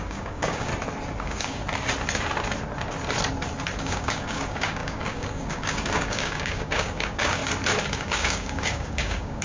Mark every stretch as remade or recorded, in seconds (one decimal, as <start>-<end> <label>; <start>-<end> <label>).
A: 0.0-0.7 remade; 0.7-1.2 recorded; 1.2-1.6 remade; 1.6-3.8 recorded; 3.8-7.4 remade; 7.4-7.9 recorded; 7.9-9.4 remade